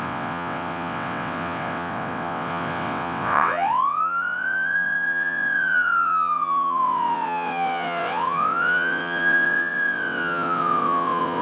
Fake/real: fake